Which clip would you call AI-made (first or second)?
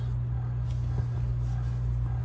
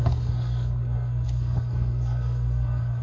second